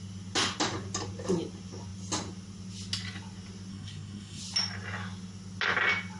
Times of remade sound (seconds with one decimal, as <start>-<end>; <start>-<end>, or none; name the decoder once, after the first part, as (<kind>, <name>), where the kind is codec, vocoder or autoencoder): 3.7-4.4 (codec, SNAC)